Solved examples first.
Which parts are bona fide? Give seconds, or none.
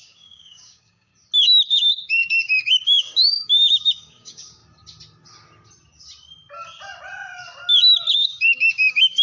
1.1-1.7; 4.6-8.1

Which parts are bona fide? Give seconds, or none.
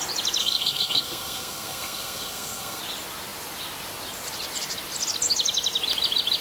0.0-0.4; 2.8-6.4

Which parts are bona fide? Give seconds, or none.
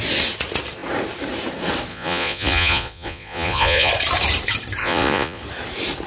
0.0-1.9; 3.9-4.8; 5.4-6.1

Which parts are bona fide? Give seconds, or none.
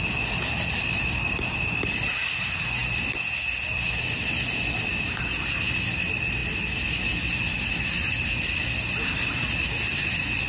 0.0-10.5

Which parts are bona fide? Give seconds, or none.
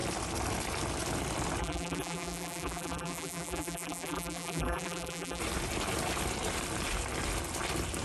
0.0-1.6; 5.4-8.0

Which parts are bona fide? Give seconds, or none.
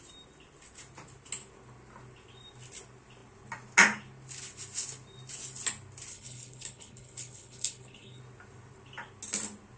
0.0-6.1; 8.2-9.8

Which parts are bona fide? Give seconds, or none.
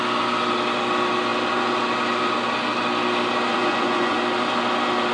0.0-3.5; 4.2-5.1